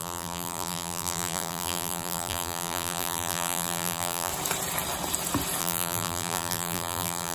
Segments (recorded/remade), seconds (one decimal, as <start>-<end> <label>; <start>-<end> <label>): 0.0-4.3 remade; 4.3-5.6 recorded; 5.6-7.3 remade